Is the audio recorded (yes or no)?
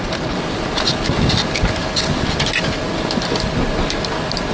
yes